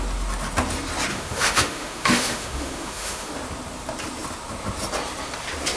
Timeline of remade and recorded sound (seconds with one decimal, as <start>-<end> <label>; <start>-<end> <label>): 0.0-1.1 recorded; 1.1-3.3 remade; 3.3-5.8 recorded